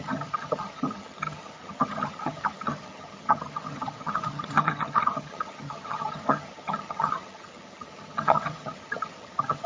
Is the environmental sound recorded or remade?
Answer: remade